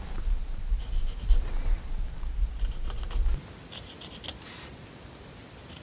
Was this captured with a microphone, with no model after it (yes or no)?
yes